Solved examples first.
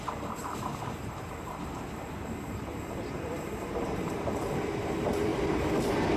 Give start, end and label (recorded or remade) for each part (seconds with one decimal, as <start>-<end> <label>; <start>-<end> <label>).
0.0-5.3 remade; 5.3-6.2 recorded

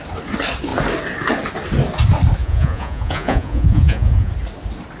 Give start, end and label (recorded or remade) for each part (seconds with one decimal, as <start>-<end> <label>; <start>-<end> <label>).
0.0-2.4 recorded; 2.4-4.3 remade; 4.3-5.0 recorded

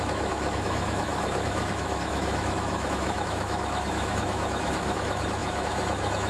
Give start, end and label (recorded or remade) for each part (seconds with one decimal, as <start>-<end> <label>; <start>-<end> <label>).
0.0-6.3 remade

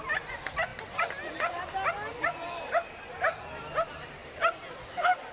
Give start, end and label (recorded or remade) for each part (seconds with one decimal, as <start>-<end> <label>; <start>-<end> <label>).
0.0-4.2 recorded; 4.2-5.3 remade

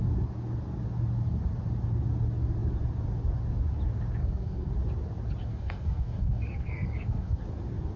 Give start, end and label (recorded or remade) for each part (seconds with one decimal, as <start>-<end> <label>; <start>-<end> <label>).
0.0-4.2 recorded; 4.2-4.7 remade; 4.7-5.5 recorded; 5.5-7.4 remade; 7.4-8.0 recorded